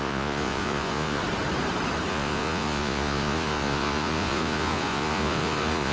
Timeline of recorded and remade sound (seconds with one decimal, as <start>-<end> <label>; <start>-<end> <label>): 0.0-1.2 remade; 1.2-2.1 recorded; 2.1-5.9 remade